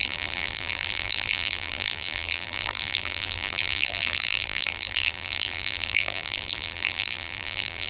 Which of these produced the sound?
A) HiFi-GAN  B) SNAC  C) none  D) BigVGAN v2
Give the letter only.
D